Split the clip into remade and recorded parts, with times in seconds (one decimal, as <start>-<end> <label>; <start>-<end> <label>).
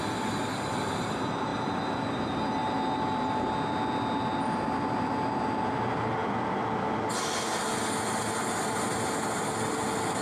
0.0-10.2 recorded